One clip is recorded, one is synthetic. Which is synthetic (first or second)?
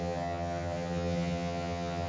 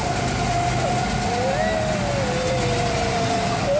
first